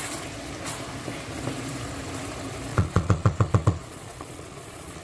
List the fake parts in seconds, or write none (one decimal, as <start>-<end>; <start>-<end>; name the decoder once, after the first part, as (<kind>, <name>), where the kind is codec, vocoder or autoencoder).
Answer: 2.7-5.0 (vocoder, Vocos)